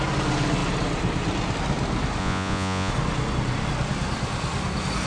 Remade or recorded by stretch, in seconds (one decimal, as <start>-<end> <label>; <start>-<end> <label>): 0.0-2.2 recorded; 2.2-2.9 remade; 2.9-5.1 recorded